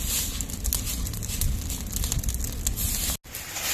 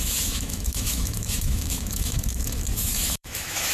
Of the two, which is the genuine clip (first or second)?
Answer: first